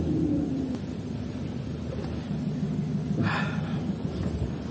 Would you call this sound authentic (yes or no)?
yes